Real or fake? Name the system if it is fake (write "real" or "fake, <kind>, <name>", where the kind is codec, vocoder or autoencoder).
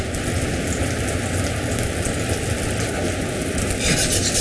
real